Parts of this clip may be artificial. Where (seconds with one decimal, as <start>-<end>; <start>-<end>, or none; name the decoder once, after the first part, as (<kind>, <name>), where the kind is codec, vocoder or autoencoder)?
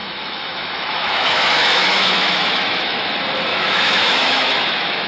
0.0-3.1 (autoencoder, DAC-VAE); 3.5-5.1